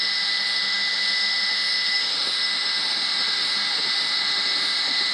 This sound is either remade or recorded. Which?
remade